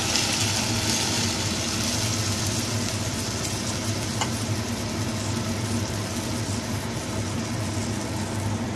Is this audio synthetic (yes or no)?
no